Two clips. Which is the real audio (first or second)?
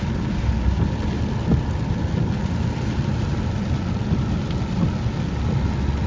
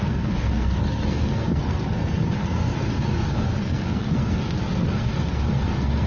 first